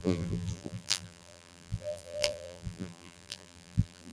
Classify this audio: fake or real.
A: fake